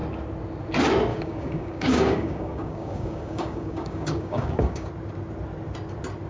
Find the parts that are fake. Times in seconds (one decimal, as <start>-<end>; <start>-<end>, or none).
1.1-4.9